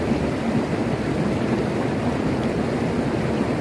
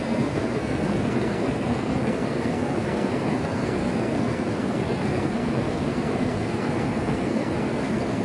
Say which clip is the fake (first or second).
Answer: second